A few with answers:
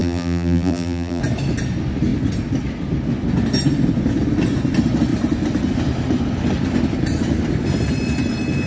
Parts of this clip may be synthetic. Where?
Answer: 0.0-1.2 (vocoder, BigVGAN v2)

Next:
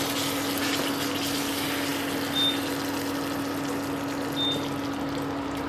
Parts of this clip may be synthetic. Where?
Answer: none

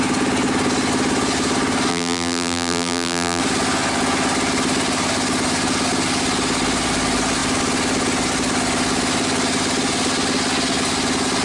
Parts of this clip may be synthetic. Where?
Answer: 1.9-3.4 (vocoder, BigVGAN v2)

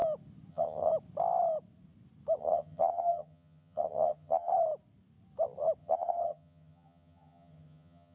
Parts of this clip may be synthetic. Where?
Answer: 0.5-0.9 (vocoder, HiFi-GAN); 2.4-4.5; 5.8-8.1

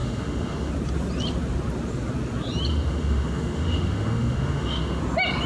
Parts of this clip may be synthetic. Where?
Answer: 0.0-0.7 (autoencoder, DAC-VAE); 2.7-5.0

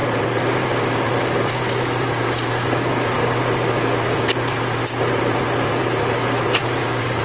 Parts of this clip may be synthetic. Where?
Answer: 1.2-3.4 (codec, DAC); 6.6-7.2